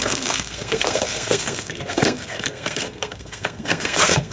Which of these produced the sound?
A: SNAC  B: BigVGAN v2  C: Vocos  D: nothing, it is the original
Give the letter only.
A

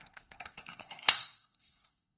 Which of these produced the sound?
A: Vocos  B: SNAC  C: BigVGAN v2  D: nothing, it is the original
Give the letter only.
B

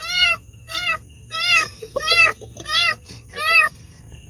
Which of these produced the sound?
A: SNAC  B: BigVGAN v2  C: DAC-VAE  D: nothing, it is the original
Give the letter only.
A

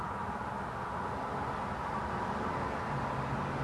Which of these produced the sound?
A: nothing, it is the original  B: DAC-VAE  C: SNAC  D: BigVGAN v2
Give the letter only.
A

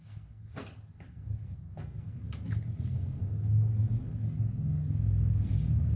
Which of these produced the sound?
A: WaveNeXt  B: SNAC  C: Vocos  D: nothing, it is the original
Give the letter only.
B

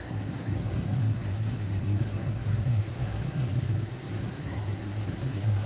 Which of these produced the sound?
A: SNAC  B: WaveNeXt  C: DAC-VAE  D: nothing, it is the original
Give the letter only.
A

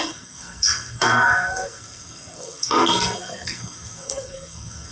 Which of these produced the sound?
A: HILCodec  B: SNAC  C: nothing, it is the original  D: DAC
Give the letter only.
B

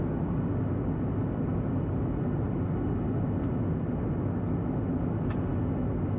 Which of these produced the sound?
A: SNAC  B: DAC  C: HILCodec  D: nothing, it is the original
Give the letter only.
D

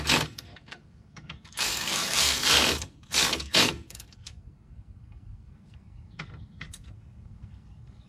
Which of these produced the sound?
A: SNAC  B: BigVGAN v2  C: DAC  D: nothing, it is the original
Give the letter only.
A